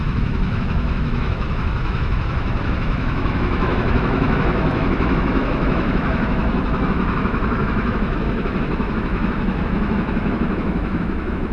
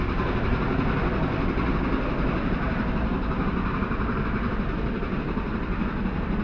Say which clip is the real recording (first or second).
second